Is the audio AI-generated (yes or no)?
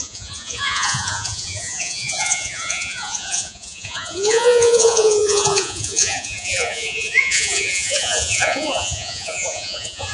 yes